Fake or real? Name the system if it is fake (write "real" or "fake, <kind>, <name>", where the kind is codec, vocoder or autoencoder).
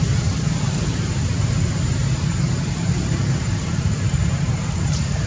fake, vocoder, BigVGAN v2